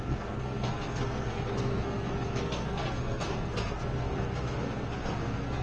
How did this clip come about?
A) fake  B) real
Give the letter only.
A